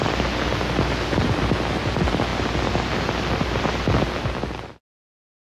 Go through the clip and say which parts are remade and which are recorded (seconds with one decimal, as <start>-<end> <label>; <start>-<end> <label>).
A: 0.0-5.6 recorded